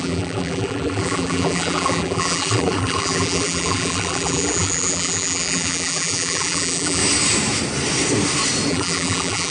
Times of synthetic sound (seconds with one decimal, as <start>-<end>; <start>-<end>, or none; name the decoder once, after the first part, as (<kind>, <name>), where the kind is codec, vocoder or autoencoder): 0.0-7.0 (vocoder, BigVGAN v2); 8.7-9.5